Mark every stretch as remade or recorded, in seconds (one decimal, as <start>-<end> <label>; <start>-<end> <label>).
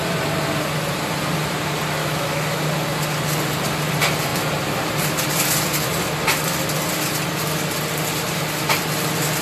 0.0-2.0 recorded; 2.0-2.6 remade; 2.6-9.4 recorded